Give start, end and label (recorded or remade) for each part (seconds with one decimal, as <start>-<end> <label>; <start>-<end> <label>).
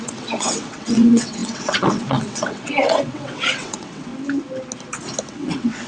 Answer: 0.0-4.1 remade; 4.1-5.3 recorded; 5.3-5.9 remade